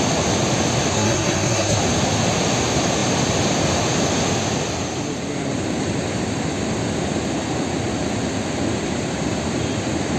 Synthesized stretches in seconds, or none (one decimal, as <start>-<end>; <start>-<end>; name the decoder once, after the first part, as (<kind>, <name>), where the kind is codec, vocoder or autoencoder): 0.9-1.8 (codec, SNAC)